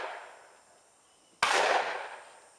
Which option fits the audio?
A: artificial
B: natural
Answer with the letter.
B